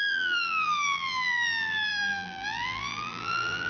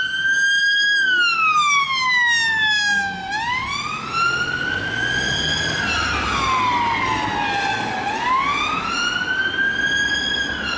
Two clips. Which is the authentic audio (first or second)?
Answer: second